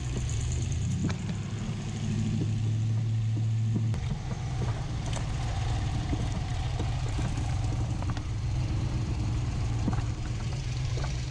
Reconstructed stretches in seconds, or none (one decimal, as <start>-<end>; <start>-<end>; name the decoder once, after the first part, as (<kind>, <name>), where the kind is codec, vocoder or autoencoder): 0.0-1.0 (vocoder, BigVGAN v2); 5.8-11.3